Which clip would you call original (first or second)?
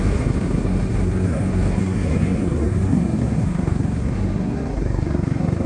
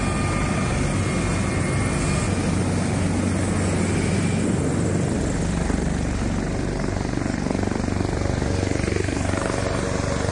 second